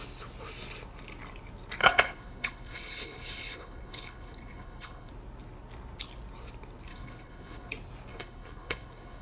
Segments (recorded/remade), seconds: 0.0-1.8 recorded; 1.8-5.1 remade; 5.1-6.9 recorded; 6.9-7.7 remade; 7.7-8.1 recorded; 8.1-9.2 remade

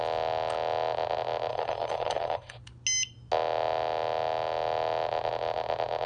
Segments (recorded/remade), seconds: 0.0-1.5 recorded; 1.5-2.6 remade; 2.6-6.1 recorded

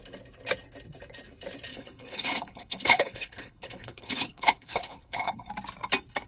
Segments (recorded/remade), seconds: 0.0-1.7 recorded; 1.7-5.5 remade; 5.5-6.3 recorded

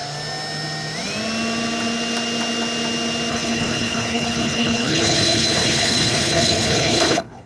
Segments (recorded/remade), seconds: 0.0-3.3 recorded; 3.3-7.5 remade